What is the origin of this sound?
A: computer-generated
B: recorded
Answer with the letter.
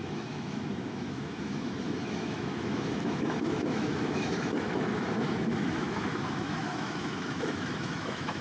A